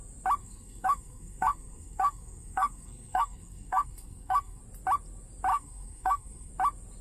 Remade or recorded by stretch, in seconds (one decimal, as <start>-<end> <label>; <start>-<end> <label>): 0.0-0.4 recorded; 0.4-4.6 remade; 4.6-5.5 recorded; 5.5-6.5 remade; 6.5-7.0 recorded